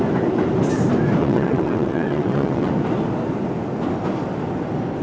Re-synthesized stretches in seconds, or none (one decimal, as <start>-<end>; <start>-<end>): 1.2-2.7